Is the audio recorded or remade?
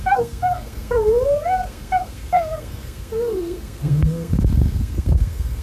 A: remade